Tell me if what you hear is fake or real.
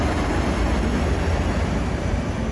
real